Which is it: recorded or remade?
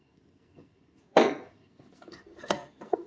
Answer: remade